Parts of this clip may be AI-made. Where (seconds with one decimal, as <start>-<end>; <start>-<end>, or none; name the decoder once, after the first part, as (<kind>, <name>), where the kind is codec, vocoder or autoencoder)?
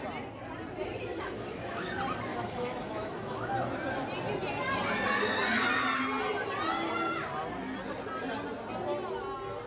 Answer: 1.1-1.9 (autoencoder, DAC-VAE); 2.3-3.5